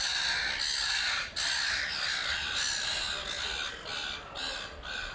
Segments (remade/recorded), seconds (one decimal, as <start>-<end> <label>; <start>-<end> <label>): 0.0-5.1 recorded